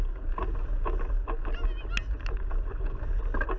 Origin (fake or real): real